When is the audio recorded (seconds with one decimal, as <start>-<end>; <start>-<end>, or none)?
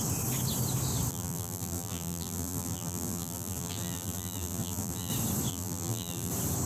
0.0-1.1; 5.1-5.5; 6.3-6.7